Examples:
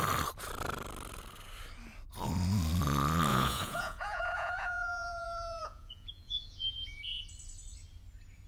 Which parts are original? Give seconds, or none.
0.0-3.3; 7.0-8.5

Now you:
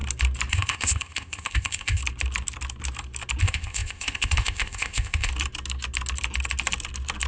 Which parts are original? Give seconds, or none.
0.0-0.5; 2.0-3.4; 5.3-7.3

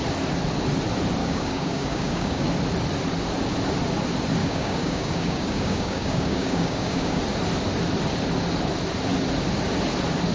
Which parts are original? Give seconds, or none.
0.0-1.2; 2.5-4.4; 7.2-10.3

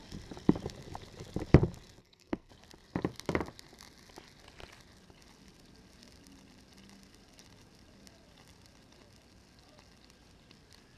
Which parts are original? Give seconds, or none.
0.0-2.0; 2.5-11.0